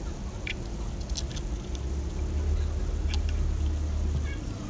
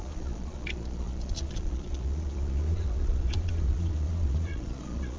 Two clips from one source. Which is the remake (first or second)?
second